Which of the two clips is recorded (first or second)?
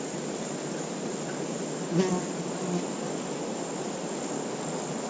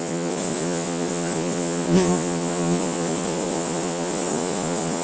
first